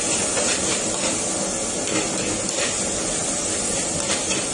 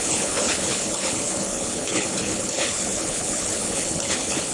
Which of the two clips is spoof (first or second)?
second